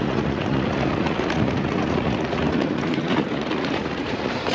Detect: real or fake fake